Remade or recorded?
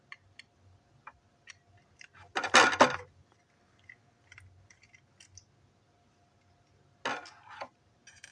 recorded